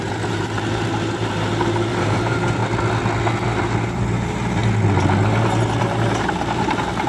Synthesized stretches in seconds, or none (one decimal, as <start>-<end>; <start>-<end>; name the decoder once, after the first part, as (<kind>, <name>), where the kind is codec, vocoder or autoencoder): 0.0-2.6 (vocoder, BigVGAN v2); 3.8-4.6; 5.8-7.1